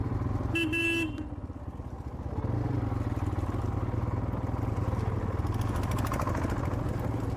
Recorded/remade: recorded